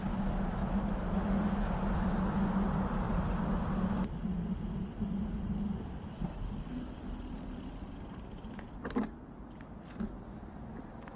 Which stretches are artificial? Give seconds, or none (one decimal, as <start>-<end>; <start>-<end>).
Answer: none